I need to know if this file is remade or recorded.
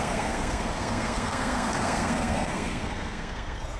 remade